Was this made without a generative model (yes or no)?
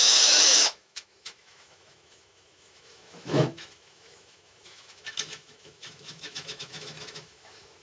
no